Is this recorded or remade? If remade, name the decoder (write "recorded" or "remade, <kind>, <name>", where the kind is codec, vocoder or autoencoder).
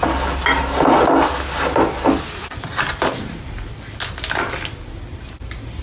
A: recorded